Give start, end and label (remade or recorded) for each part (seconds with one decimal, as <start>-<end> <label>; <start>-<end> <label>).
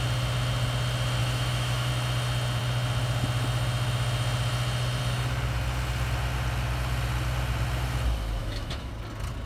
0.0-1.2 recorded; 1.2-1.9 remade; 1.9-8.4 recorded; 8.4-8.9 remade; 8.9-9.5 recorded